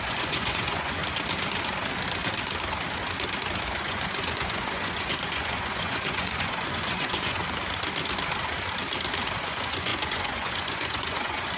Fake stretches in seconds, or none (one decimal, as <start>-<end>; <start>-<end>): 0.0-1.0; 3.6-7.4; 9.4-11.6

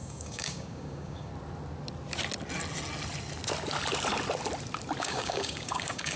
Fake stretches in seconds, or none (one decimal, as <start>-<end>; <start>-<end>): 0.0-1.3; 5.0-6.2

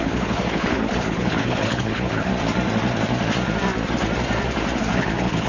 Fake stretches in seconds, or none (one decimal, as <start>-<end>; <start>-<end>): 0.0-2.3; 4.8-5.5